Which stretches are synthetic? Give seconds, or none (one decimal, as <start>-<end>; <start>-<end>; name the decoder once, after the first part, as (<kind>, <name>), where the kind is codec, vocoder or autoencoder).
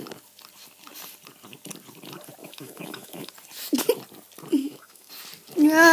2.4-3.3 (autoencoder, DAC-VAE); 4.6-5.1